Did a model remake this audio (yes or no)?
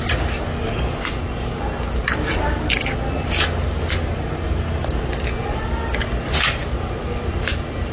no